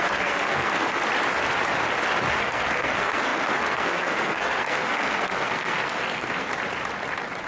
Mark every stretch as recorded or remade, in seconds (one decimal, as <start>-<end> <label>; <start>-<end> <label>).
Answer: 0.0-1.0 remade; 1.0-2.3 recorded; 2.3-6.5 remade; 6.5-7.5 recorded